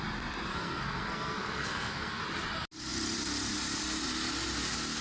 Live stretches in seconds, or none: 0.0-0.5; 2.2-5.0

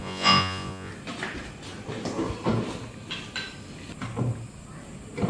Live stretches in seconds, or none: 0.9-5.3